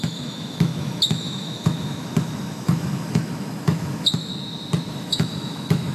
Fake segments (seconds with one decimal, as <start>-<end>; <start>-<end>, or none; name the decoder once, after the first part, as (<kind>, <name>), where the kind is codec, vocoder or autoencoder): 0.0-4.3 (autoencoder, DAC-VAE); 4.9-5.9